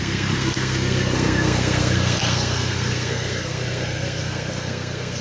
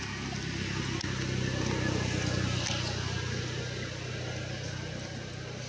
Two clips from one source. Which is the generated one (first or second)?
first